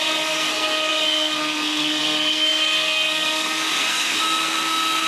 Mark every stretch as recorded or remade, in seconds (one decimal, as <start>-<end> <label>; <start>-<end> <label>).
0.0-5.1 remade